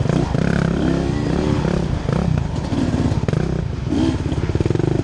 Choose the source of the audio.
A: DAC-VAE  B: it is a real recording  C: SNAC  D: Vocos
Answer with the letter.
B